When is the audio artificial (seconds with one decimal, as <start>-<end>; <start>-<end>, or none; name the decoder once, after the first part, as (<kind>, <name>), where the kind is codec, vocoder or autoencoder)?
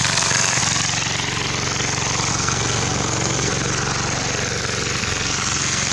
0.0-0.6 (codec, SNAC); 2.3-3.5; 5.0-5.9